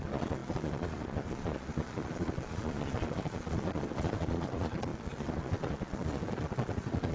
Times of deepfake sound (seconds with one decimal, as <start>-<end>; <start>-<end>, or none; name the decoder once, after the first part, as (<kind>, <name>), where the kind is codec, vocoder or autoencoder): 0.0-7.1 (vocoder, Vocos)